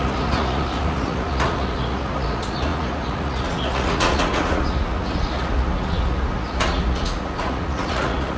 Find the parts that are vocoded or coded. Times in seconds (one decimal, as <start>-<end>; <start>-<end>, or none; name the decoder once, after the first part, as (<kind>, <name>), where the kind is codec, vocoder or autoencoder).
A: 0.0-8.4 (vocoder, Vocos)